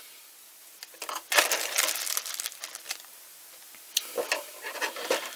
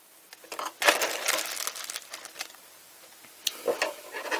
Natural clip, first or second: second